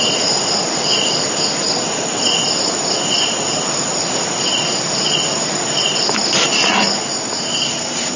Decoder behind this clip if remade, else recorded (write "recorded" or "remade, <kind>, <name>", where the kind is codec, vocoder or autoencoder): recorded